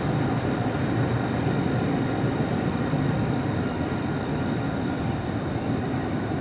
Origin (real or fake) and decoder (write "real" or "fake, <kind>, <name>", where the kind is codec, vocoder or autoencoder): fake, vocoder, BigVGAN v2